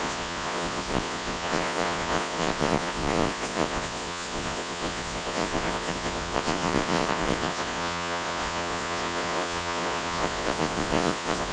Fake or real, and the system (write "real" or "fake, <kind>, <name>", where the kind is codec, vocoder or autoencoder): fake, vocoder, Vocos